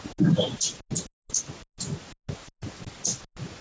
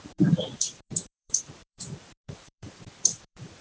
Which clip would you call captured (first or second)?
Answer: first